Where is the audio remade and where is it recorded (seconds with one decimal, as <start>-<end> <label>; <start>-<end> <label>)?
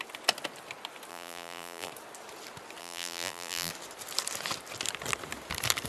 0.0-1.1 recorded; 1.1-1.9 remade; 1.9-2.8 recorded; 2.8-3.7 remade; 3.7-5.9 recorded